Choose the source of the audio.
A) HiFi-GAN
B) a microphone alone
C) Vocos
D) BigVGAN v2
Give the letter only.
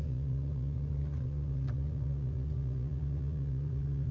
C